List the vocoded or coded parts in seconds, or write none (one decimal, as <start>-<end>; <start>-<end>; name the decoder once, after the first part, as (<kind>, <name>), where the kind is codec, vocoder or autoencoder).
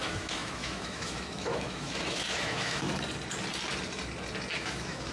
0.0-2.9 (autoencoder, DAC-VAE); 4.6-5.1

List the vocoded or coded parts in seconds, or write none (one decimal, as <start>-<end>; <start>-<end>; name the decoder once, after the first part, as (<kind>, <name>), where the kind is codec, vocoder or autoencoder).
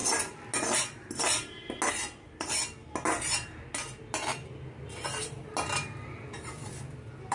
none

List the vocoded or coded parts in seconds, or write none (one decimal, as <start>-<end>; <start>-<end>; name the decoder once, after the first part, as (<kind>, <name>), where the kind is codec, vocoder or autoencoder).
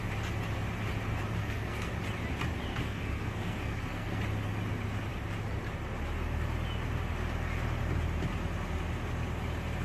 1.4-1.9 (codec, SNAC); 2.7-4.2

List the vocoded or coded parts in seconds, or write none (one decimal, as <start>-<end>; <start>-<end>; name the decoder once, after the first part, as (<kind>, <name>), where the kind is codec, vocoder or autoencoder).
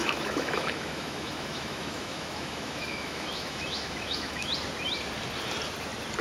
0.0-4.5 (autoencoder, DAC-VAE)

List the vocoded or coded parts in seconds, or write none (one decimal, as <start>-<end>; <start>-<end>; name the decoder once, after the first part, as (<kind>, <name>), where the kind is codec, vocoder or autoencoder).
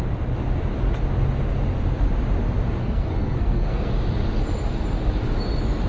2.8-3.9 (codec, SNAC)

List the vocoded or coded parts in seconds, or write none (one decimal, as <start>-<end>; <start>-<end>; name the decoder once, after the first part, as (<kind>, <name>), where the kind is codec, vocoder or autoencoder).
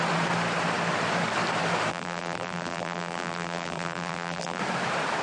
1.9-4.6 (vocoder, BigVGAN v2)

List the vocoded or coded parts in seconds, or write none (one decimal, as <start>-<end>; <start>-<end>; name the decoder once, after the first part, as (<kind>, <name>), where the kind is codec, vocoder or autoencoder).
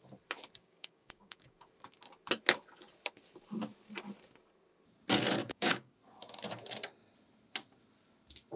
0.6-1.6 (codec, DAC); 5.4-5.9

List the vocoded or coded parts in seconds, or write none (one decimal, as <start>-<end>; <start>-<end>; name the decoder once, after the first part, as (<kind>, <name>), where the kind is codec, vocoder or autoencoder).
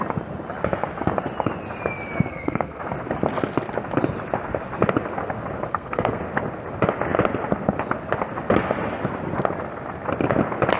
2.3-2.8 (codec, SNAC); 5.7-6.2